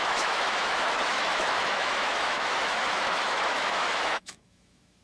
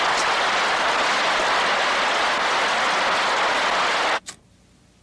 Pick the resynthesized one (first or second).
first